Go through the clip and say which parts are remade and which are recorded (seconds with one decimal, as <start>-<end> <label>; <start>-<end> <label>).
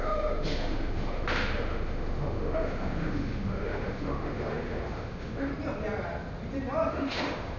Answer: 0.0-5.5 remade; 5.5-6.9 recorded; 6.9-7.6 remade